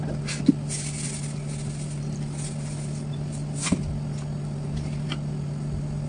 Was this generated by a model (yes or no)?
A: no